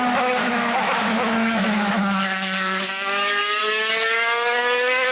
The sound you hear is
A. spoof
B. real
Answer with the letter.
A